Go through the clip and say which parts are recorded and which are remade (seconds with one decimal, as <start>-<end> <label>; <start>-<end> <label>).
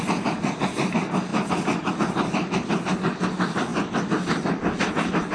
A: 0.0-5.3 recorded